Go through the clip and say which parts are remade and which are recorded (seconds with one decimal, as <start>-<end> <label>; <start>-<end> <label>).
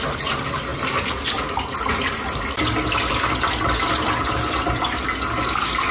0.0-5.9 recorded